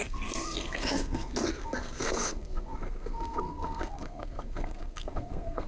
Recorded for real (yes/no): no